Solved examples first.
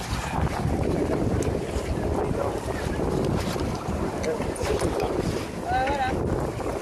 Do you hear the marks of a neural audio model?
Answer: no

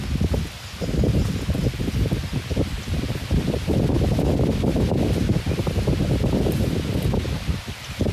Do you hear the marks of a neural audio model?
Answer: no